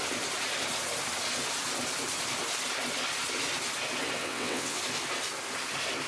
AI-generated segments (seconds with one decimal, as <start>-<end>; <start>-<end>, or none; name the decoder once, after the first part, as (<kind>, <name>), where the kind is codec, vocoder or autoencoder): 4.2-4.8 (vocoder, WaveNeXt)